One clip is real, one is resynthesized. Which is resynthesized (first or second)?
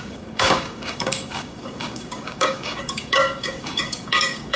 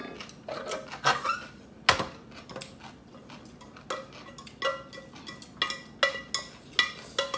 first